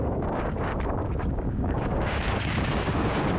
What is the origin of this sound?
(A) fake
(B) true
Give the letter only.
A